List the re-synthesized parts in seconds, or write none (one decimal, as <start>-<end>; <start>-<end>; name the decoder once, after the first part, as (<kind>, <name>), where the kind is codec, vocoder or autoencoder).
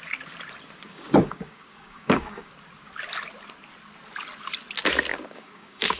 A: 0.9-2.5 (codec, DAC); 5.1-6.0